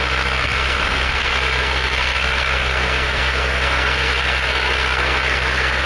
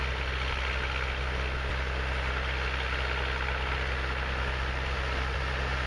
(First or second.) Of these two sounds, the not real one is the first